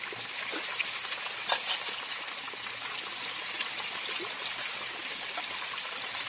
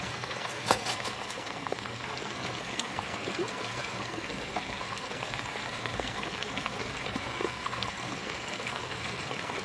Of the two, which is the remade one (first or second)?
second